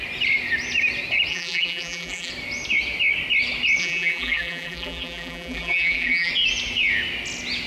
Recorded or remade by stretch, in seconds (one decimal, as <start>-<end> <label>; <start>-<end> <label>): 0.0-1.3 recorded; 1.3-2.3 remade; 2.3-3.8 recorded; 3.8-6.3 remade; 6.3-7.7 recorded